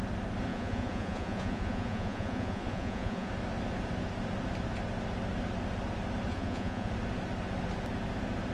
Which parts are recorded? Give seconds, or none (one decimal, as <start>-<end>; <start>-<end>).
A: 0.0-0.5; 3.3-6.3; 6.9-8.5